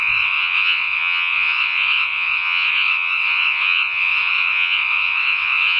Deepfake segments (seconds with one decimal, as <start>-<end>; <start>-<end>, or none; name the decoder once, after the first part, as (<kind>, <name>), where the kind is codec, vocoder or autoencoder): 0.0-5.8 (vocoder, WaveNeXt)